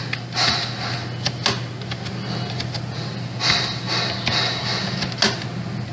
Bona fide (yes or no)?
yes